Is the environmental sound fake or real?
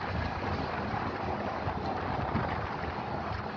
real